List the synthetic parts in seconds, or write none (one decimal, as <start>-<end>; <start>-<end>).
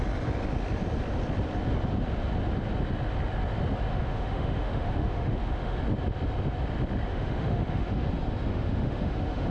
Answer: 3.9-5.8; 7.1-8.1; 8.5-9.5